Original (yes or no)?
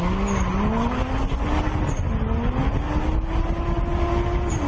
yes